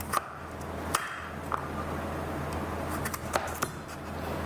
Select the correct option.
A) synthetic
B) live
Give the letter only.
B